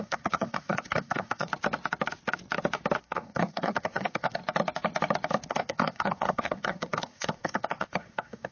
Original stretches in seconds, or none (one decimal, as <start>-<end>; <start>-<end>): 1.5-3.0; 4.4-5.5